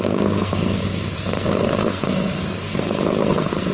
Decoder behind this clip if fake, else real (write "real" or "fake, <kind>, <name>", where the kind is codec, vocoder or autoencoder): fake, codec, SNAC